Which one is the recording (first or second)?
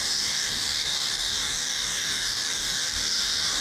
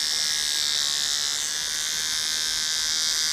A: second